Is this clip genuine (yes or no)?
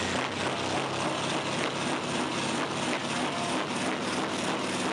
yes